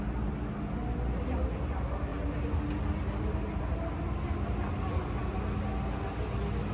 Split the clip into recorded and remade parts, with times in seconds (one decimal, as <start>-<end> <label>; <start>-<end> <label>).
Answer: 0.0-6.7 recorded